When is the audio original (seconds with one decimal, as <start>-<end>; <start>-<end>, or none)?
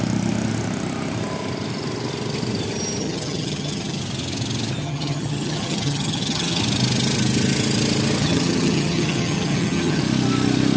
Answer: 0.0-3.0; 4.0-4.8; 6.6-8.2; 10.0-10.8